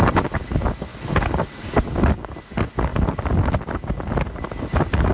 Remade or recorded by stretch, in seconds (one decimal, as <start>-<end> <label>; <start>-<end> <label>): 0.0-5.1 recorded